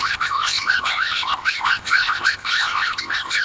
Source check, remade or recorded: remade